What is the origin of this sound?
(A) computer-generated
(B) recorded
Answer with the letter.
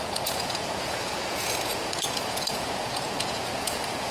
A